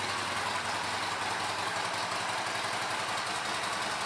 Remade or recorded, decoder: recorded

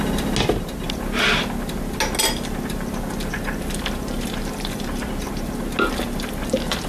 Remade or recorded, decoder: recorded